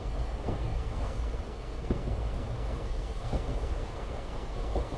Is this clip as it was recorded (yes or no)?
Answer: no